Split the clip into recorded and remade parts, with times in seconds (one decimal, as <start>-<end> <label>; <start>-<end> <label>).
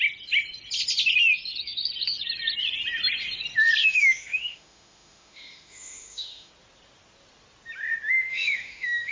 0.0-3.8 recorded; 3.8-6.5 remade; 6.5-8.3 recorded; 8.3-9.1 remade